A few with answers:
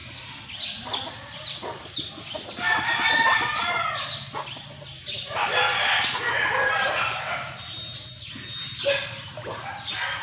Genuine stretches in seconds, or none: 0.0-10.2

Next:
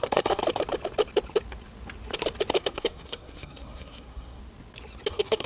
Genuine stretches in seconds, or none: 0.4-2.6; 4.4-5.1

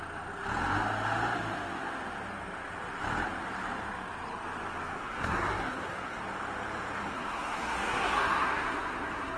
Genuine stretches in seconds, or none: 0.0-5.0; 6.2-7.1

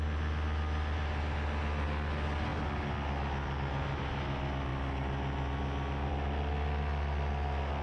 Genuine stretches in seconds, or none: 0.0-7.8

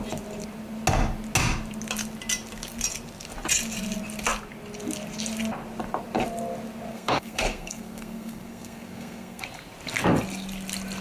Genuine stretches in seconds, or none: 0.0-6.9; 9.4-11.0

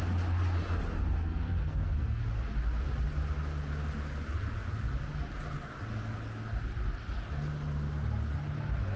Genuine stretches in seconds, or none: 0.0-1.2; 2.2-9.0

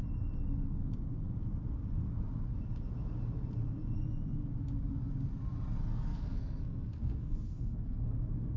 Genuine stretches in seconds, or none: 0.0-5.9